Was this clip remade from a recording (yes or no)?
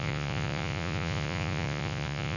yes